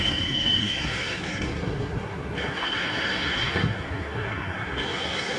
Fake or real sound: fake